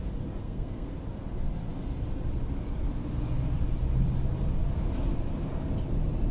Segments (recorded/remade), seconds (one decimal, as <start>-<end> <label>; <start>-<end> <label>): 0.0-0.4 recorded; 0.4-0.9 remade; 0.9-6.3 recorded